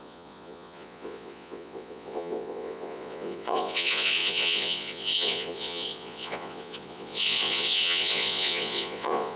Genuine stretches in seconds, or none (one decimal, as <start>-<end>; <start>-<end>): none